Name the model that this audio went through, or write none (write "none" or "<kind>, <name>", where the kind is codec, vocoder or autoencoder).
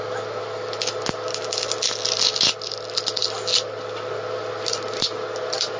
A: none